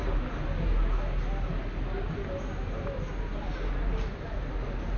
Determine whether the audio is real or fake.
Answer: real